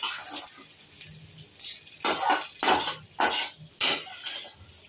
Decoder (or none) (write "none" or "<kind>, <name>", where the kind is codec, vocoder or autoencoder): none